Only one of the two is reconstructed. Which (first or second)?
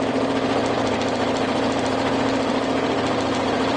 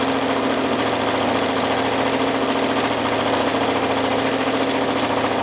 first